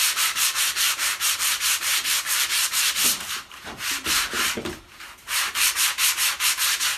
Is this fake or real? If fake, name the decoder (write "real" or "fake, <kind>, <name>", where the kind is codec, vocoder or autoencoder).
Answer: fake, vocoder, BigVGAN v2